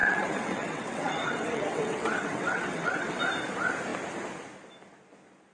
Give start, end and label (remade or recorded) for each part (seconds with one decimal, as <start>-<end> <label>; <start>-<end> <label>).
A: 0.0-3.2 remade; 3.2-5.5 recorded